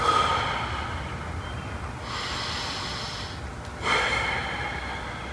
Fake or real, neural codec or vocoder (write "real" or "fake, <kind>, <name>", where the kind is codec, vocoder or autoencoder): real